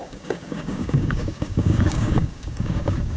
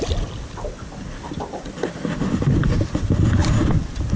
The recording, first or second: second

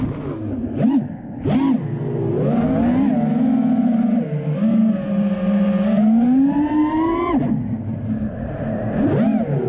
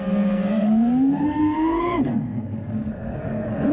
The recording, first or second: first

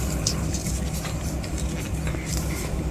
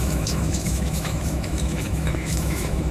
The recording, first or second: first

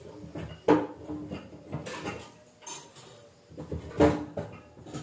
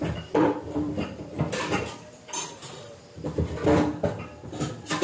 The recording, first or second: first